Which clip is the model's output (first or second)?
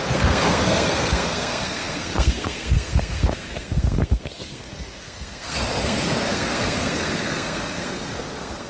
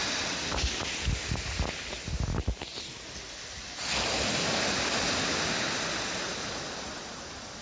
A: first